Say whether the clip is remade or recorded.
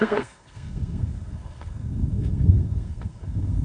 remade